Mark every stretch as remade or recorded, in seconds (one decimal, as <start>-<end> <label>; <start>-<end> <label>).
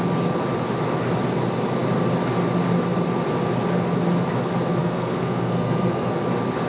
0.0-4.8 recorded; 4.8-6.1 remade; 6.1-6.7 recorded